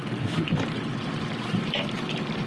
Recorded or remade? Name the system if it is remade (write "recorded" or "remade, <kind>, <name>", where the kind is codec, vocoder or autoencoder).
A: remade, vocoder, BigVGAN v2